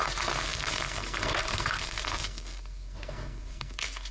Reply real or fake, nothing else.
fake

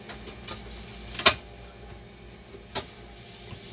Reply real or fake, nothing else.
real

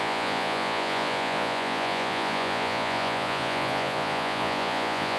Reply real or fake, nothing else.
fake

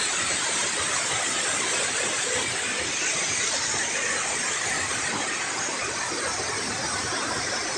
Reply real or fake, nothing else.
real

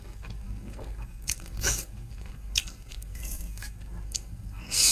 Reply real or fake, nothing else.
fake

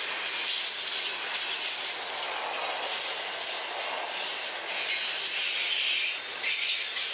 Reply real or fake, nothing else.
real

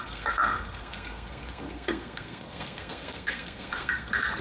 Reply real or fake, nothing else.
fake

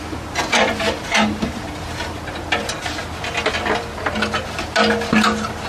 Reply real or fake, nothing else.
real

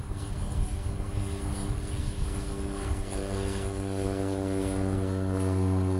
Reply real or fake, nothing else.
fake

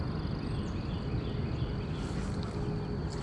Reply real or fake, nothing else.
real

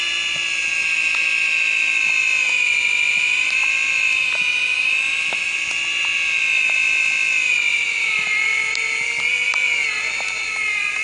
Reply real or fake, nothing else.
real